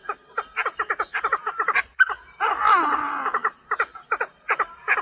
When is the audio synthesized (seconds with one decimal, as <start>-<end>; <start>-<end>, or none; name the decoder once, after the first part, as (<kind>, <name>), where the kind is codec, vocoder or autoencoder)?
none